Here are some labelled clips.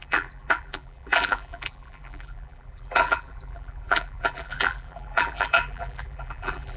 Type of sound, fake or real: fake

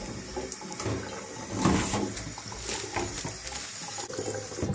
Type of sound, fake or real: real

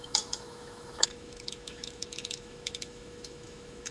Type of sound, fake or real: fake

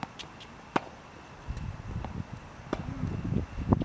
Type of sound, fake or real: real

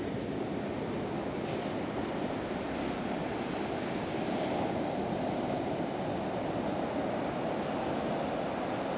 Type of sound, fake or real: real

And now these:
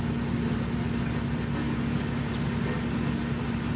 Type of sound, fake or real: real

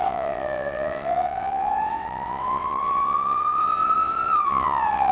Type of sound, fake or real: fake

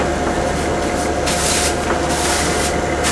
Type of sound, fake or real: real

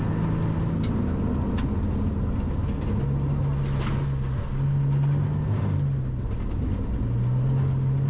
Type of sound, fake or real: real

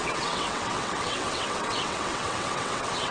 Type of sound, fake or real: fake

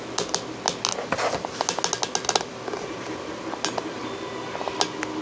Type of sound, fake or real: real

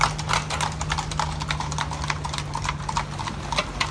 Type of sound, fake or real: real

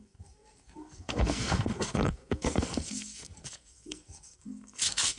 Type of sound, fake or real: fake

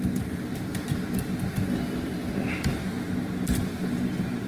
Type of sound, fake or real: real